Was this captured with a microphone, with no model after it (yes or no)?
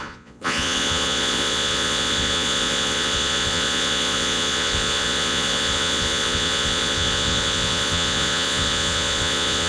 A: no